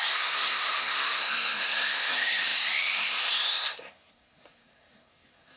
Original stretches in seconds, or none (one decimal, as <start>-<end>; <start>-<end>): none